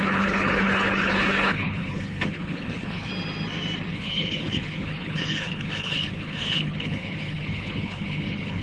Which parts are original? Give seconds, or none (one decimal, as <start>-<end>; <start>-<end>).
3.1-3.9